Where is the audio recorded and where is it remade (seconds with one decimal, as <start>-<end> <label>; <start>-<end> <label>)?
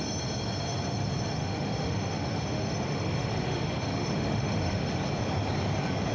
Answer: 0.0-1.4 recorded; 1.4-4.9 remade; 4.9-6.1 recorded